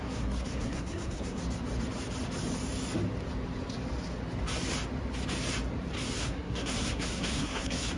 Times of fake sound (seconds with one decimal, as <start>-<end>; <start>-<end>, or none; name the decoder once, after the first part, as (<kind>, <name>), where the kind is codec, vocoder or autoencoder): 0.0-1.4 (codec, SNAC); 6.2-8.0